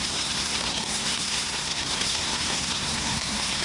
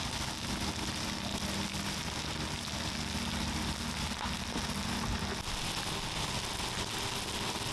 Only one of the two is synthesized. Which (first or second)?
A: first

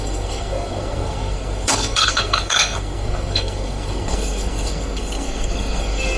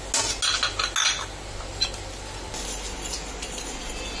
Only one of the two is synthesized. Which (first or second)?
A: first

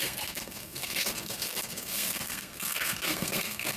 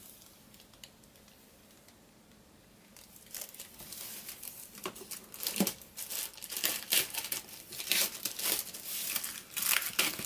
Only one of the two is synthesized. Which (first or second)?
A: first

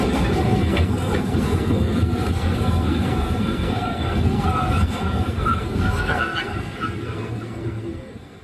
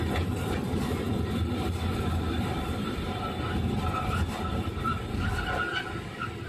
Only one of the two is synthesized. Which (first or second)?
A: first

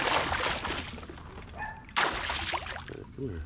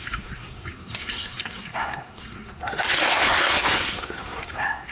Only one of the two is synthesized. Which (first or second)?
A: second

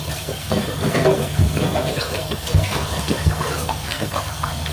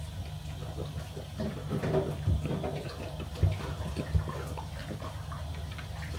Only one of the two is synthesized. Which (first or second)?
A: first